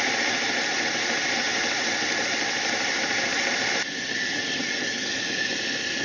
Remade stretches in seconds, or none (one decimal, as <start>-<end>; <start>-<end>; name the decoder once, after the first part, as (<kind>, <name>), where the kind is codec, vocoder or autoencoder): 1.5-3.7 (vocoder, BigVGAN v2)